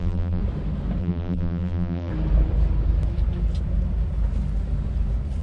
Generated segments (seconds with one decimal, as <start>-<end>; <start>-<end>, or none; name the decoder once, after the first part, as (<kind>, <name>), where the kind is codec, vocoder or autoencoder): 0.0-0.4 (vocoder, BigVGAN v2); 1.0-2.1